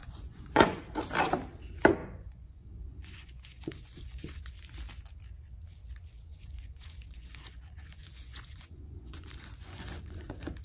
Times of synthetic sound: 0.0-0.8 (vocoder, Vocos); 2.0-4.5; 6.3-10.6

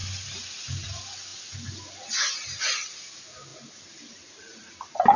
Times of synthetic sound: none